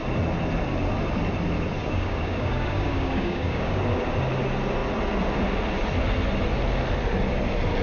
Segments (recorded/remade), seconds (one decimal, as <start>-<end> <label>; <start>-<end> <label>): 0.0-1.8 recorded; 1.8-3.8 remade; 3.8-7.8 recorded